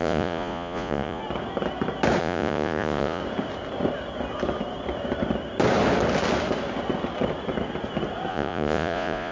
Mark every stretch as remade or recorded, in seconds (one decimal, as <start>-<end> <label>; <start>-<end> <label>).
0.0-1.2 remade; 1.2-2.2 recorded; 2.2-3.2 remade; 3.2-8.3 recorded; 8.3-9.3 remade